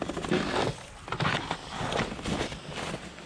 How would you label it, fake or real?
real